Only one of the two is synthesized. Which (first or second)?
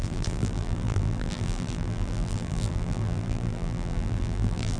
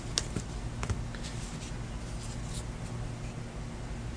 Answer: first